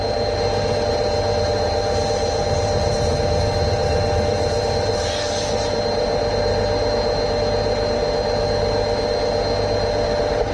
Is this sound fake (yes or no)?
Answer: no